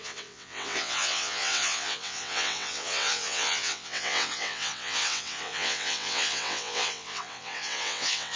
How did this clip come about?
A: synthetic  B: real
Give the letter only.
A